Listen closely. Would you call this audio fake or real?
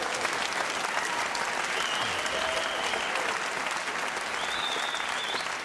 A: real